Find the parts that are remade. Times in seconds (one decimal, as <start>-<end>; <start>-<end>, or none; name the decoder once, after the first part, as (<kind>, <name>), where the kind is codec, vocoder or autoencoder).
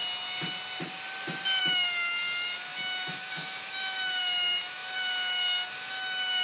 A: 1.6-6.4 (autoencoder, DAC-VAE)